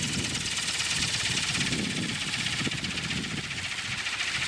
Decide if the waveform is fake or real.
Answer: real